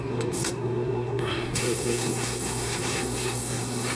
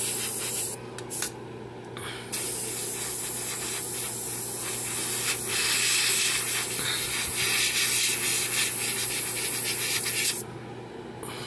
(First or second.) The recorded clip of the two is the second